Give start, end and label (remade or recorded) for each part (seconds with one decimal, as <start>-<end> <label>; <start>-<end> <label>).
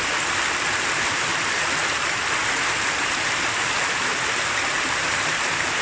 0.0-5.8 recorded